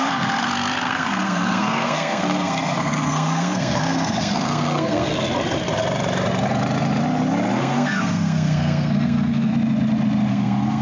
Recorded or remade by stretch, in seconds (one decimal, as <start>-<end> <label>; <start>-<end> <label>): 0.0-5.1 remade; 5.1-7.6 recorded; 7.6-9.5 remade; 9.5-10.3 recorded; 10.3-10.8 remade